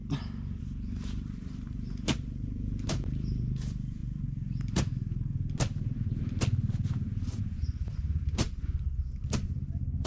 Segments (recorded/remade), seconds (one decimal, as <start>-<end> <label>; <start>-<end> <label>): 0.0-0.6 recorded; 0.6-4.0 remade; 4.0-7.4 recorded; 7.4-10.1 remade